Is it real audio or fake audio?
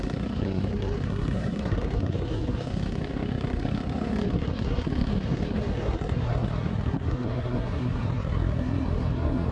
fake